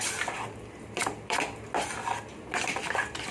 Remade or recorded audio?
remade